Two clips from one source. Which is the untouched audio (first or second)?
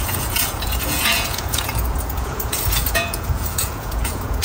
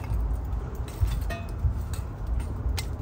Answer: second